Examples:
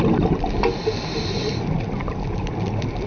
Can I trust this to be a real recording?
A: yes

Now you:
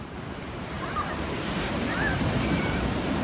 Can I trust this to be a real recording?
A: no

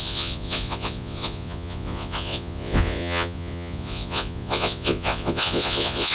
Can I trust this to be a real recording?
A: no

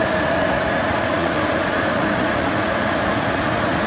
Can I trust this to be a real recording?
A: no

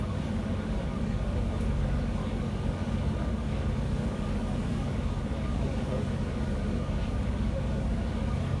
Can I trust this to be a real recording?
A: no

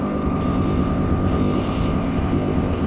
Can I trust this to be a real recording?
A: no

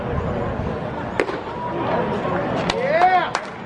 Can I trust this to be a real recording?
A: yes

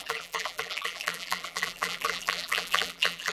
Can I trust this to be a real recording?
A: no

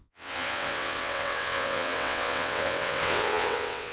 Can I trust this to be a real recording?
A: no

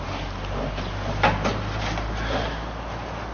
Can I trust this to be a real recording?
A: yes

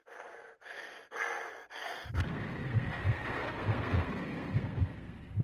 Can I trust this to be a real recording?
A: no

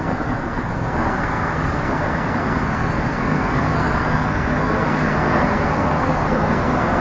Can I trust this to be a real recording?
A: no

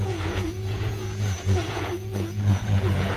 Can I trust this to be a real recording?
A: no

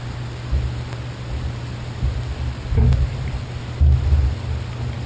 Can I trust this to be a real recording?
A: yes